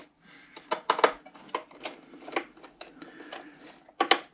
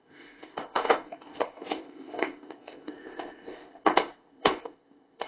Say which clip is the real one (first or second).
first